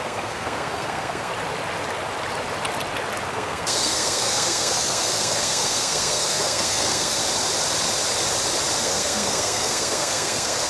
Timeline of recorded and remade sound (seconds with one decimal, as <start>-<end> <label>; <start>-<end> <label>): 0.0-1.3 remade; 1.3-3.3 recorded; 3.3-7.2 remade; 7.2-8.8 recorded; 8.8-10.7 remade